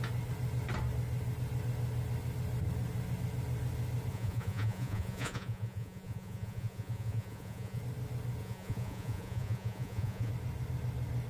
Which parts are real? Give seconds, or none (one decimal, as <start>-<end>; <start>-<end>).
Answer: 0.0-4.1; 7.8-8.4; 10.3-11.3